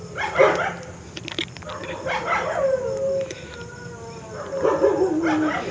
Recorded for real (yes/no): yes